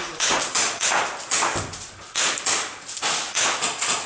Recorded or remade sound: recorded